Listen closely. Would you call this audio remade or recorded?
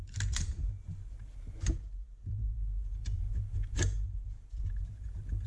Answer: remade